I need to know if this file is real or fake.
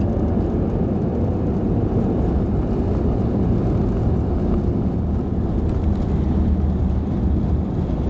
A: real